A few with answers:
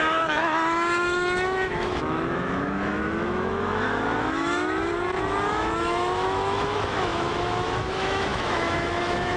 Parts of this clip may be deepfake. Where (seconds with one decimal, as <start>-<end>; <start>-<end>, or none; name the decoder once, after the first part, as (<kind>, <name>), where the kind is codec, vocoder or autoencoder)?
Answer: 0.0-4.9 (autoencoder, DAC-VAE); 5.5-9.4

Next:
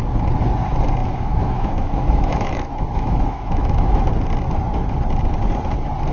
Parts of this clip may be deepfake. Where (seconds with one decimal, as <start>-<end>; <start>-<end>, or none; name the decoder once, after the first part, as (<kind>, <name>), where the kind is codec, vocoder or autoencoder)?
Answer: 1.0-4.1 (autoencoder, DAC-VAE)

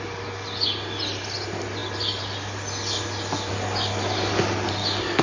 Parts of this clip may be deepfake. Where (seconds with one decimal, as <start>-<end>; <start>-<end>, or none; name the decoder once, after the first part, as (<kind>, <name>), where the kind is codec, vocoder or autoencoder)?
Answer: none

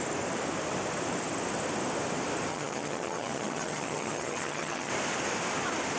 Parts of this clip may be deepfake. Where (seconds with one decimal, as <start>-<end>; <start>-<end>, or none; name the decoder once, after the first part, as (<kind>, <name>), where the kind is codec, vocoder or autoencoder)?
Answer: 2.5-4.9 (vocoder, HiFi-GAN)

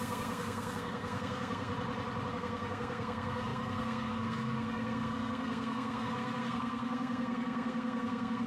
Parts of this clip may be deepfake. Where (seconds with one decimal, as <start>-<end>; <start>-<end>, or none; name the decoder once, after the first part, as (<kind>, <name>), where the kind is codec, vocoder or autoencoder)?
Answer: 0.0-1.7 (codec, SNAC); 2.3-8.5